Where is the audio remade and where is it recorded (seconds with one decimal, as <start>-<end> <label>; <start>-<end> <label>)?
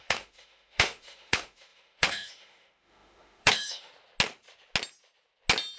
0.0-3.9 remade; 3.9-5.8 recorded